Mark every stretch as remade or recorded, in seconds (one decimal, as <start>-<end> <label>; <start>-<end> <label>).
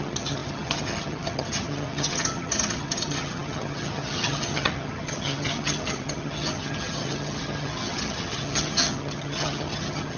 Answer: 0.0-10.2 remade